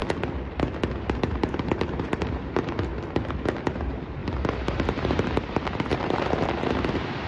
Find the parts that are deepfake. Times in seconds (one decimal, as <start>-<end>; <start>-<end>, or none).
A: 0.8-2.9; 3.6-7.3